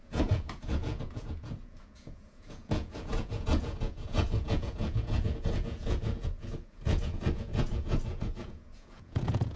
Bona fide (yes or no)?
no